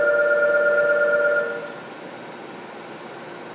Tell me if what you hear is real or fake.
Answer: real